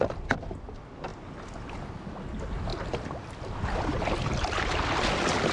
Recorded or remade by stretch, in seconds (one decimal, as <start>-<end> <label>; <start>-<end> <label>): 0.0-5.5 recorded